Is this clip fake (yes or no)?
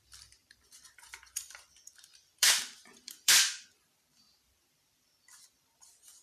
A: yes